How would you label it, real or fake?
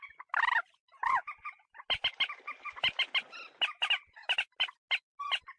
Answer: real